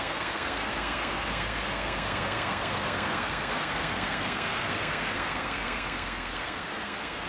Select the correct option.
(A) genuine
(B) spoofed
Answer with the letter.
B